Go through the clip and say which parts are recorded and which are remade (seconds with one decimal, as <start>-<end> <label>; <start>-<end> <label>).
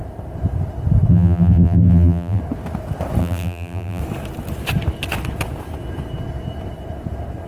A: 0.0-1.1 recorded; 1.1-2.4 remade; 2.4-3.2 recorded; 3.2-4.0 remade; 4.0-7.5 recorded